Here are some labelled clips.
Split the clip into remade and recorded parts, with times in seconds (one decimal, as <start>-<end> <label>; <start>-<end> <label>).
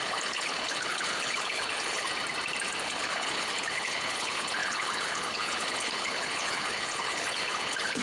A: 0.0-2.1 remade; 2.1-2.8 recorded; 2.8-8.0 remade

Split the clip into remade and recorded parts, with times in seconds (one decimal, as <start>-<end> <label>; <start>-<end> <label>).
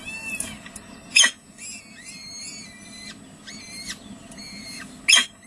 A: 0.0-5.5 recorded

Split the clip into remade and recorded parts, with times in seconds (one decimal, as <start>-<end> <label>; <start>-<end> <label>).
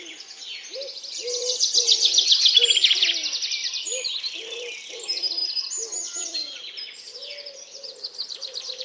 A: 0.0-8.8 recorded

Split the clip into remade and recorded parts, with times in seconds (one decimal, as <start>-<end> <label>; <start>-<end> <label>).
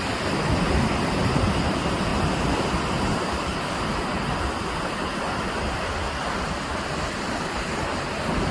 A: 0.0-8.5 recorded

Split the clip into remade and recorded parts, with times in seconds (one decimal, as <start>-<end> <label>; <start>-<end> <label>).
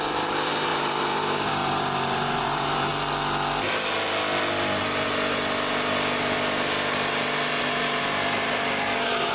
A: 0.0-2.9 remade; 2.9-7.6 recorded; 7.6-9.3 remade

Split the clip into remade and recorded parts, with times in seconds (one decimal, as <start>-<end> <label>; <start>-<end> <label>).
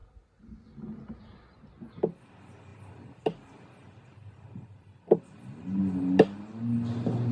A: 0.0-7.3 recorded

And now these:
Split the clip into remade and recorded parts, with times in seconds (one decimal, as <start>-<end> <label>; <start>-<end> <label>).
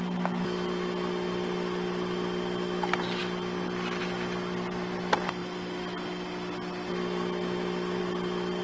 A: 0.0-8.6 recorded